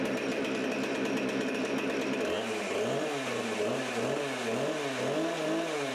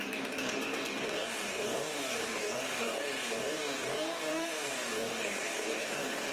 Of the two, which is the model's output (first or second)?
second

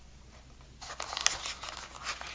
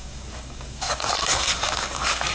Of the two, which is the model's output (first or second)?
second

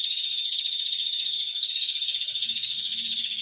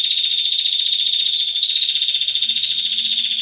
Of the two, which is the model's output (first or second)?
first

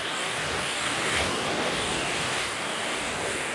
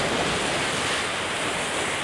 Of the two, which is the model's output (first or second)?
first